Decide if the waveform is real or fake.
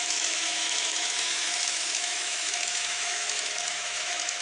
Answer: fake